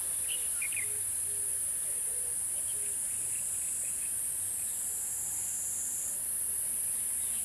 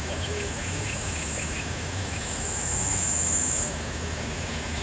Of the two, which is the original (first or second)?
first